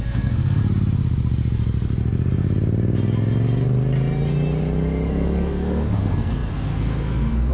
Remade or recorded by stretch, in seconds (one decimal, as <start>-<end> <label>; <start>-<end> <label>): 0.0-0.6 remade; 0.6-5.1 recorded; 5.1-7.5 remade